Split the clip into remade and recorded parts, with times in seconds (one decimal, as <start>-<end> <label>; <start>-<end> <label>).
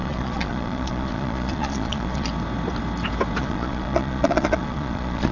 0.0-2.3 remade; 2.3-3.4 recorded; 3.4-5.3 remade